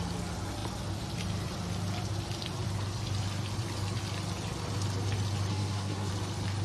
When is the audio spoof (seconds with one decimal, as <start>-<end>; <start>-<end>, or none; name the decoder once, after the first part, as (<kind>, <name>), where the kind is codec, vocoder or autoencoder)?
5.5-6.1 (codec, SNAC)